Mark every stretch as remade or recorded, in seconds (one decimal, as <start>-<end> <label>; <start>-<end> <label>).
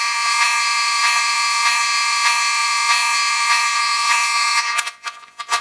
0.0-5.6 remade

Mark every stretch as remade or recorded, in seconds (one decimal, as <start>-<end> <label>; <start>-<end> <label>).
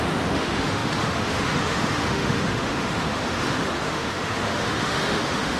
0.0-5.6 remade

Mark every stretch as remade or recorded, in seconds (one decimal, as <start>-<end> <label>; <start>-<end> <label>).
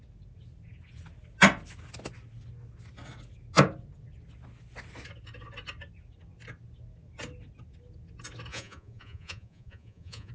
0.0-8.5 recorded; 8.5-10.3 remade